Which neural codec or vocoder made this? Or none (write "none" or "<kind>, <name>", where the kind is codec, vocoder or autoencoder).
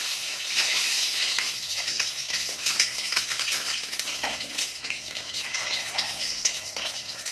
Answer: codec, SNAC